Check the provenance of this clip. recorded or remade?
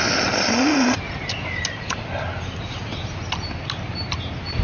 recorded